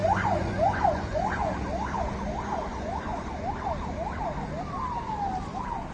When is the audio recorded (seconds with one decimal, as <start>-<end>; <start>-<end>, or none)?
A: 1.5-2.7; 3.3-5.9